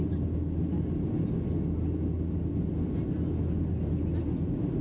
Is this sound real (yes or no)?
yes